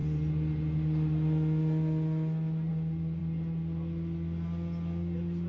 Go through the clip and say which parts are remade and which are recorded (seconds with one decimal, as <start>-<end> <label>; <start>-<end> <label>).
0.0-5.5 recorded